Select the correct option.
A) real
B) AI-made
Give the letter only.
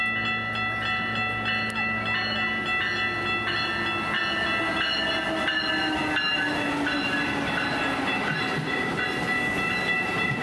A